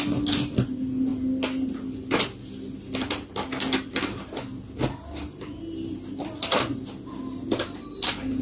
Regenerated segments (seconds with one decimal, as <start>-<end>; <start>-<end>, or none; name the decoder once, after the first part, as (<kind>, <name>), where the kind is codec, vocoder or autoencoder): none